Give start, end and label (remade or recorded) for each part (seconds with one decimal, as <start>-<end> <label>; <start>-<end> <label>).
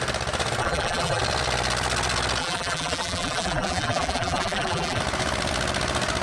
0.0-0.6 recorded; 0.6-1.2 remade; 1.2-2.4 recorded; 2.4-5.0 remade; 5.0-6.2 recorded